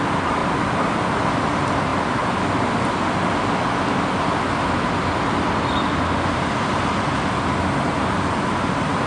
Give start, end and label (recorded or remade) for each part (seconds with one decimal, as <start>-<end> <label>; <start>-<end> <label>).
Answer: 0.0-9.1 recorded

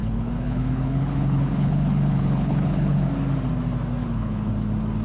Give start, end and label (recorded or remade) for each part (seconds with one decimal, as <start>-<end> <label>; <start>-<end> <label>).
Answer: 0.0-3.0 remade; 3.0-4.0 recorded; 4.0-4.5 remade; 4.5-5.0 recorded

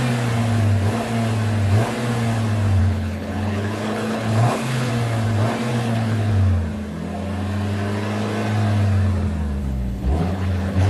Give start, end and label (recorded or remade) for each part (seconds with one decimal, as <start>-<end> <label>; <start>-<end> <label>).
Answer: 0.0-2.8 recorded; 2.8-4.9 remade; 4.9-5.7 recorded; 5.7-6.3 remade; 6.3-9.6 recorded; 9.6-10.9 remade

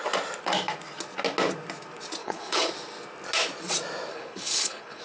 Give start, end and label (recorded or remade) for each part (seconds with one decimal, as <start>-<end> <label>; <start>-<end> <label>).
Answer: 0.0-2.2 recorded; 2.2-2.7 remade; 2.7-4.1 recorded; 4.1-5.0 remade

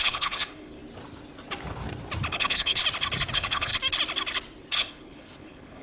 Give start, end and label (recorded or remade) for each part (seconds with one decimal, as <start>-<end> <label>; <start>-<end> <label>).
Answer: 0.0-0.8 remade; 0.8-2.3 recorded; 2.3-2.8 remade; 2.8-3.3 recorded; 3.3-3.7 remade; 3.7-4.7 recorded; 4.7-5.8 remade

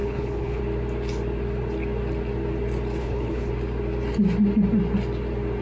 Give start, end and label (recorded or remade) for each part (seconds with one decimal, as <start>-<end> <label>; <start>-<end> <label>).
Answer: 0.0-0.6 remade; 0.6-3.0 recorded; 3.0-3.5 remade; 3.5-5.6 recorded

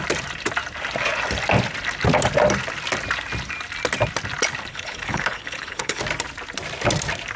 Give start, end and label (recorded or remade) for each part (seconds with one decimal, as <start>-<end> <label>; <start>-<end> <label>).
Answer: 0.0-4.7 recorded; 4.7-6.0 remade; 6.0-7.4 recorded

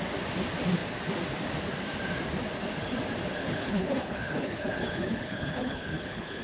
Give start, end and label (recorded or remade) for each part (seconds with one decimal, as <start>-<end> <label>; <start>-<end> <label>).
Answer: 0.0-3.4 recorded; 3.4-6.4 remade